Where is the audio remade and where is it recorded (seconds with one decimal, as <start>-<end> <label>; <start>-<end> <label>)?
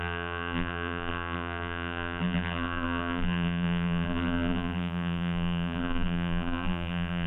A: 0.0-7.3 remade